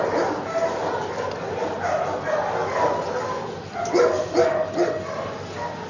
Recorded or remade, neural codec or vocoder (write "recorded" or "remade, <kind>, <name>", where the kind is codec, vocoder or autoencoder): recorded